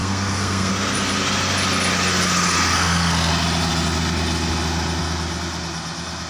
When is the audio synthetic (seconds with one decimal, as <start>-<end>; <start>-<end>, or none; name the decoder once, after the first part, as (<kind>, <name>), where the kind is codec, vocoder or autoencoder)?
0.0-0.7 (codec, SNAC); 2.7-3.3